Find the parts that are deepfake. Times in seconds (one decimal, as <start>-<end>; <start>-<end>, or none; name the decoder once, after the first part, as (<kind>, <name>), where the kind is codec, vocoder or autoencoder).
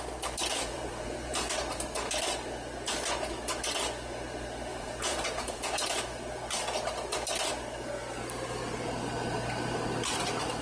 0.5-1.5 (vocoder, Vocos); 4.7-6.0